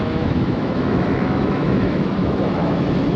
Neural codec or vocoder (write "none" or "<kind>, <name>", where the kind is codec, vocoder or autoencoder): autoencoder, DAC-VAE